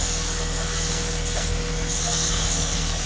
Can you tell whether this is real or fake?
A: fake